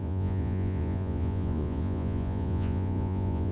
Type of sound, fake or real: fake